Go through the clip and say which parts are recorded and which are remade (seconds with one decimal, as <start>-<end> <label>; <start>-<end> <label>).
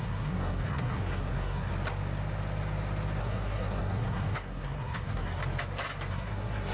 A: 0.0-1.7 remade; 1.7-3.2 recorded; 3.2-5.4 remade; 5.4-6.1 recorded; 6.1-6.7 remade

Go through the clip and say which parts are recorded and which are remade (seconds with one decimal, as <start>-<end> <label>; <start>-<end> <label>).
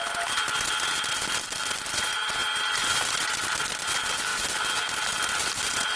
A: 0.0-6.0 recorded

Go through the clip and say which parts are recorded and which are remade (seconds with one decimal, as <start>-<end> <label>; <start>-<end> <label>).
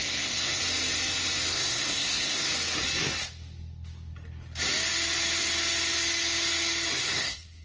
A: 0.0-0.6 remade; 0.6-1.5 recorded; 1.5-2.5 remade; 2.5-7.0 recorded; 7.0-7.6 remade